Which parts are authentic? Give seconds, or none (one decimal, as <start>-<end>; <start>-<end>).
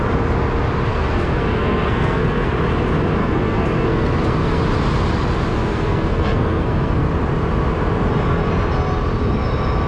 0.0-0.9; 2.5-3.2; 4.6-5.5; 7.1-9.9